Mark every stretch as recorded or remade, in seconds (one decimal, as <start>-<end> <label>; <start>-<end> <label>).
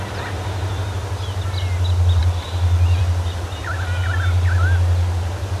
0.0-5.6 recorded